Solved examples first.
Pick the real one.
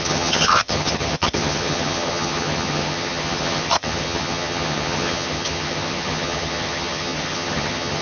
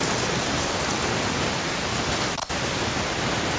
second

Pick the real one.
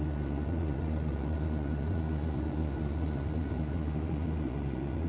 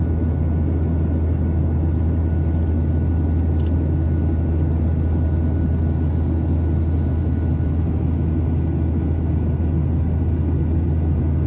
second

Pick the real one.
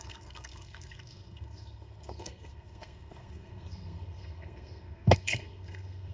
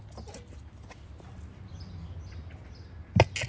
second